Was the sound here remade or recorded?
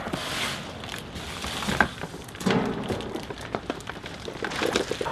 recorded